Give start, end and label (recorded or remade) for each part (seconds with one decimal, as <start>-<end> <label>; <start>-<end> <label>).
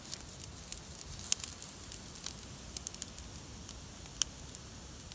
0.0-5.1 recorded